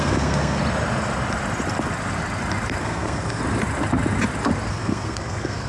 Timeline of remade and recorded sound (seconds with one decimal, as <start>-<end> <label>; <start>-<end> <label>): 0.0-0.6 remade; 0.6-2.8 recorded; 2.8-3.4 remade; 3.4-4.7 recorded; 4.7-5.7 remade